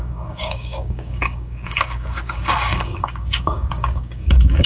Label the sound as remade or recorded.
remade